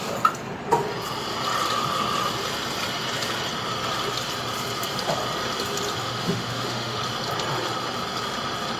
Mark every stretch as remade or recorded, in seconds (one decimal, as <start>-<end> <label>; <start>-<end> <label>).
0.0-6.0 recorded; 6.0-7.0 remade; 7.0-8.8 recorded